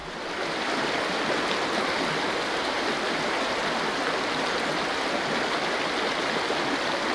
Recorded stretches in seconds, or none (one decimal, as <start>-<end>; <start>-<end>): 0.0-7.1